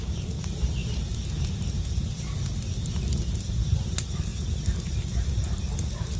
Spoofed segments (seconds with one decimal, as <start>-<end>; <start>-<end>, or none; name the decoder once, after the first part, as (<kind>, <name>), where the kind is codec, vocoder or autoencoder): none